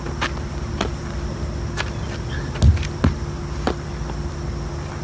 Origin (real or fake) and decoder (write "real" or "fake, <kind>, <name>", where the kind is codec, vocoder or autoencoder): real